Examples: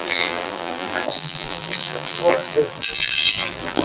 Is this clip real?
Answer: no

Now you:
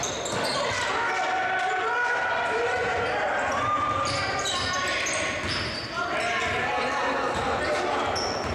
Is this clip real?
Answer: yes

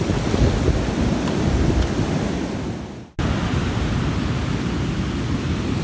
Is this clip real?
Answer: yes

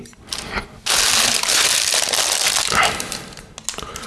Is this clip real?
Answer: yes